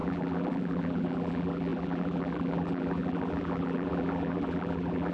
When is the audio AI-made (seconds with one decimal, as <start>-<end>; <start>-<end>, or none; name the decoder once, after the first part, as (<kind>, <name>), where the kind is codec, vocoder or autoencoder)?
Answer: 0.0-5.1 (vocoder, BigVGAN v2)